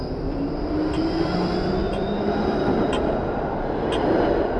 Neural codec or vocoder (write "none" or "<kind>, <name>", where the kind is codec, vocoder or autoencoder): none